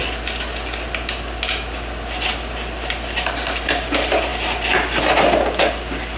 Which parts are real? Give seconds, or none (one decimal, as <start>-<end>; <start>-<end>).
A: 0.0-6.2